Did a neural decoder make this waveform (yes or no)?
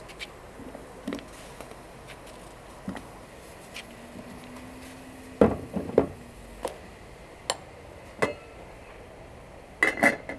no